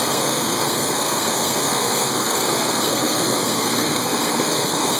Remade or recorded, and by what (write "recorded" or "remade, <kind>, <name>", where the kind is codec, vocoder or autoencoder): remade, codec, SNAC